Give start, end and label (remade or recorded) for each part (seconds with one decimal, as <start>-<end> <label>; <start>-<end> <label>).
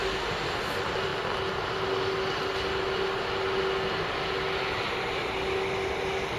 0.0-6.4 recorded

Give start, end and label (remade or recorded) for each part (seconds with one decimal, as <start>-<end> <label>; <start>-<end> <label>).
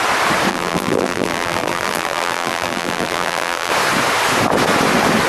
0.0-0.5 recorded; 0.5-3.7 remade; 3.7-5.3 recorded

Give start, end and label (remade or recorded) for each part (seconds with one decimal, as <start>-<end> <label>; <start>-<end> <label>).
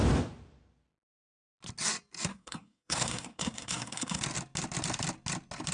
0.0-2.3 recorded; 2.3-4.2 remade; 4.2-5.7 recorded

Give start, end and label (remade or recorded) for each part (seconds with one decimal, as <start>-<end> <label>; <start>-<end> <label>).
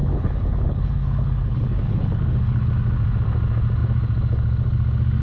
0.0-2.7 remade; 2.7-5.2 recorded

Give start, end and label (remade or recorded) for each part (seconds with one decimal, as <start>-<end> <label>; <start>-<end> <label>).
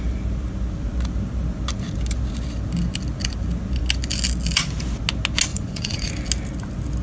0.0-5.5 recorded; 5.5-6.1 remade; 6.1-7.0 recorded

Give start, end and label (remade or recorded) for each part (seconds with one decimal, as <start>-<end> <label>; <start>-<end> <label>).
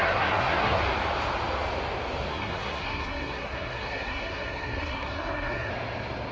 0.0-0.8 remade; 0.8-2.3 recorded; 2.3-5.7 remade; 5.7-6.3 recorded